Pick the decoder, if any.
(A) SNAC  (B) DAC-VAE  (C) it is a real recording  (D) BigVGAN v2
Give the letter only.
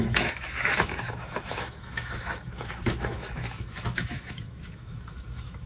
B